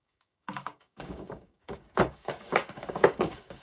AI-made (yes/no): yes